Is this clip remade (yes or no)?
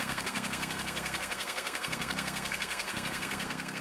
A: yes